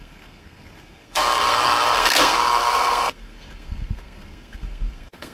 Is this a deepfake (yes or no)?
yes